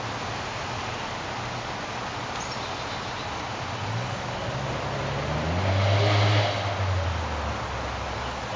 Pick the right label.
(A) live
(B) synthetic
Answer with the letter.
A